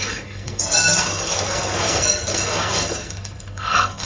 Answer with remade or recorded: remade